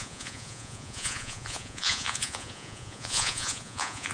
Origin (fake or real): fake